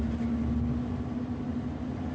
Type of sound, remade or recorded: recorded